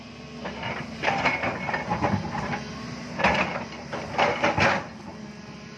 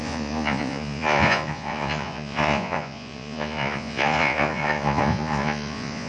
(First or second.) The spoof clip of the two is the second